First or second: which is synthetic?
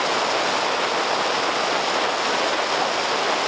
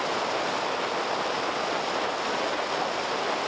second